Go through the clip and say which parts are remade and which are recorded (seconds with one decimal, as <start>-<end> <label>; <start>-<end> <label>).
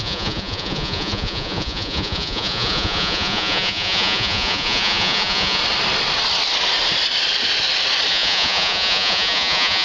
0.0-5.6 remade; 5.6-8.1 recorded; 8.1-9.8 remade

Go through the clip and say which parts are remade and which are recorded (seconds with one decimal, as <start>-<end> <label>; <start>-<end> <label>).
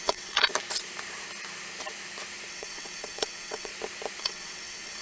0.0-0.5 remade; 0.5-2.5 recorded; 2.5-3.7 remade; 3.7-4.2 recorded; 4.2-5.0 remade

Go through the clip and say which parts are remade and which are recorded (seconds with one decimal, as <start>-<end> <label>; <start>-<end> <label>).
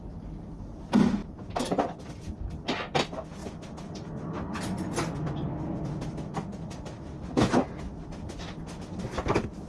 0.0-6.1 recorded; 6.1-7.3 remade; 7.3-9.7 recorded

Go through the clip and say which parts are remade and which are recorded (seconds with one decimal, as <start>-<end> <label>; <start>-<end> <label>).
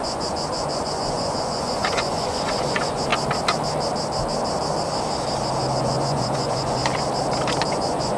0.0-3.1 remade; 3.1-5.8 recorded; 5.8-6.8 remade; 6.8-7.7 recorded; 7.7-8.2 remade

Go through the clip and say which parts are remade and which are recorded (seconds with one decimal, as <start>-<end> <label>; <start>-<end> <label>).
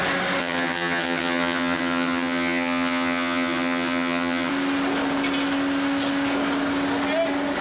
0.0-0.4 recorded; 0.4-4.5 remade; 4.5-7.6 recorded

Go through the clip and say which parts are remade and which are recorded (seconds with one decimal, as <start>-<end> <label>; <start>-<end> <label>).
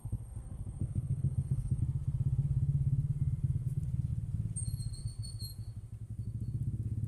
0.0-1.8 remade; 1.8-7.1 recorded